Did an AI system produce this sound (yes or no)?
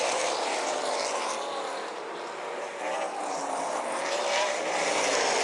yes